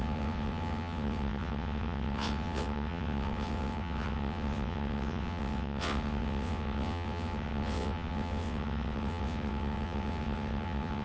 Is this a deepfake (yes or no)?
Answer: yes